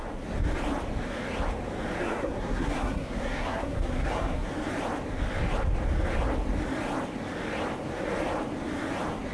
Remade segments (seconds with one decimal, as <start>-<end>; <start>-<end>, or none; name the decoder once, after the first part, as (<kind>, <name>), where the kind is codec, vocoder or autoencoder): 2.0-4.5 (codec, SNAC)